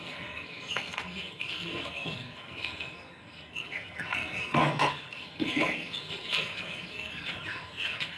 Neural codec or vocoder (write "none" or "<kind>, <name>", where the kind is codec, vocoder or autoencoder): codec, SNAC